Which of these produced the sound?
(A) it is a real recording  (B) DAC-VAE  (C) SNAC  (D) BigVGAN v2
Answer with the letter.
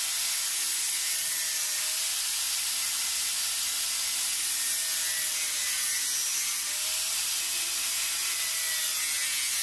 A